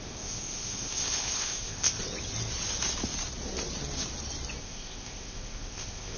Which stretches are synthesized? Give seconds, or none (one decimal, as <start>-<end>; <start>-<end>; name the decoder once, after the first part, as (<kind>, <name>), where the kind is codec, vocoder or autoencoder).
0.0-2.0 (codec, ZipCodec); 4.6-6.2